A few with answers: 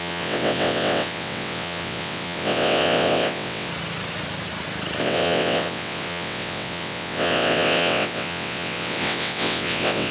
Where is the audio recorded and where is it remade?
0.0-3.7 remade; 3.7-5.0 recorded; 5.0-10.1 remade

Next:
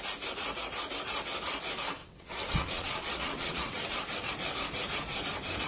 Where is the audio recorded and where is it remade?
0.0-2.0 recorded; 2.0-4.3 remade; 4.3-5.7 recorded

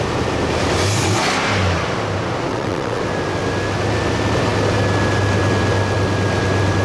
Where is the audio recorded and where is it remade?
0.0-2.5 recorded; 2.5-3.0 remade; 3.0-6.8 recorded

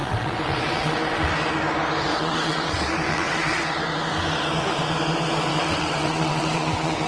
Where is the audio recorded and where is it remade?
0.0-1.3 remade; 1.3-2.1 recorded; 2.1-3.6 remade; 3.6-5.5 recorded; 5.5-7.1 remade

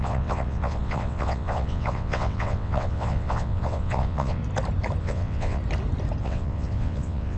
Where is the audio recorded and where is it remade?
0.0-4.4 remade; 4.4-5.0 recorded; 5.0-5.6 remade; 5.6-6.2 recorded; 6.2-7.4 remade

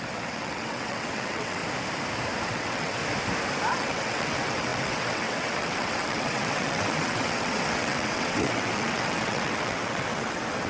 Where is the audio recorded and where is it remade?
0.0-1.6 remade; 1.6-2.4 recorded; 2.4-3.0 remade; 3.0-3.7 recorded; 3.7-10.7 remade

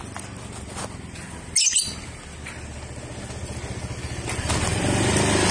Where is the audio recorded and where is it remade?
0.0-5.5 recorded